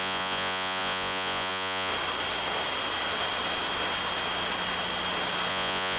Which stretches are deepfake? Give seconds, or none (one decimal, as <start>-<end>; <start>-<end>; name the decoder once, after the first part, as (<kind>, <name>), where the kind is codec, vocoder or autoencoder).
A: 0.0-1.9 (vocoder, Vocos); 5.5-6.0